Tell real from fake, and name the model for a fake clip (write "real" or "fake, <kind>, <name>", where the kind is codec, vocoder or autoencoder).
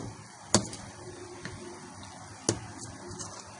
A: real